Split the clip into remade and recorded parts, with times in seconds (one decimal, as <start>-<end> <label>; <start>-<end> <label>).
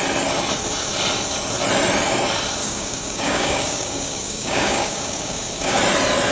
0.0-2.6 recorded; 2.6-5.8 remade; 5.8-6.3 recorded